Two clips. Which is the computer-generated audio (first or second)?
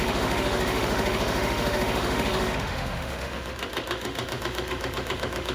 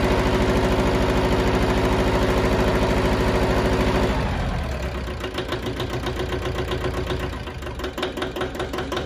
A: first